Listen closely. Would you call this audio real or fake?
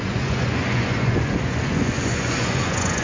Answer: fake